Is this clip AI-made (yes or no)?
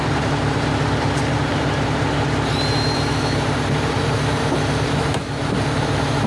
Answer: yes